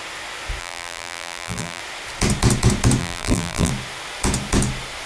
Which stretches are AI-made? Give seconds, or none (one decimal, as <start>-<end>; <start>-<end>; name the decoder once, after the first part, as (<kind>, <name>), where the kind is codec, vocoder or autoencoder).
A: 0.6-1.8 (vocoder, BigVGAN v2); 3.0-3.7